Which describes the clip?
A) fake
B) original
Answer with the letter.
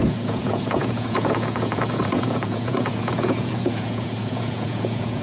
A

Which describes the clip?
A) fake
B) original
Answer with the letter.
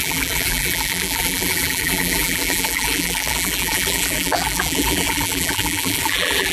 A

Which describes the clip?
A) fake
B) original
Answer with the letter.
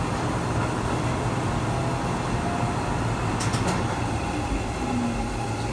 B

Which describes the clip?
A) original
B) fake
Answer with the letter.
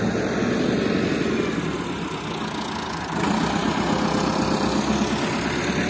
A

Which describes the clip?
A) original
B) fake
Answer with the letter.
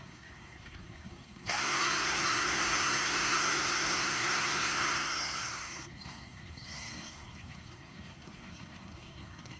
B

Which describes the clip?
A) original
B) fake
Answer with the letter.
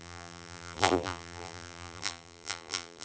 B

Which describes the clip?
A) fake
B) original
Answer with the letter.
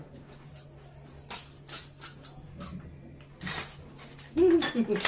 B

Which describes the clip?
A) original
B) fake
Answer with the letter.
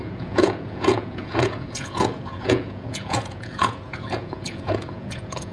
B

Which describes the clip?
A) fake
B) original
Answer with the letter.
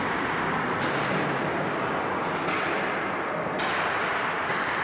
B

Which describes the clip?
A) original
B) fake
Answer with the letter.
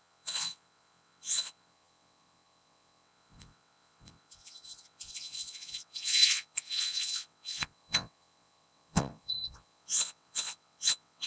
B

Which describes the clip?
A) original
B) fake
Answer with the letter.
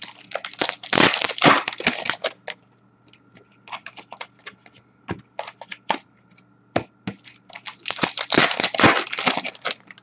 A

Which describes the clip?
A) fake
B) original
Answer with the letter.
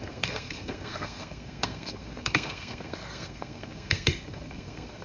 A